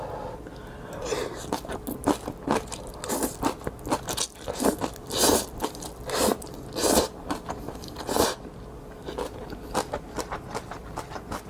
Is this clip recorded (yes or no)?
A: yes